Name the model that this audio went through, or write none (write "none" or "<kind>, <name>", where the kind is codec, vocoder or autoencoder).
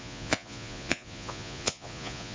vocoder, Vocos